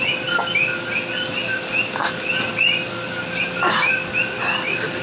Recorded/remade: recorded